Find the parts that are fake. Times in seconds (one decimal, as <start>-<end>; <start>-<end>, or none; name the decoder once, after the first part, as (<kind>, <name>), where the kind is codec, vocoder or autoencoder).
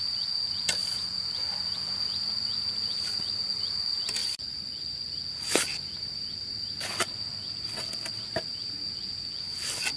4.2-5.2 (vocoder, BigVGAN v2)